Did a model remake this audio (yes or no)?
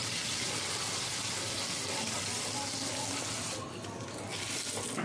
no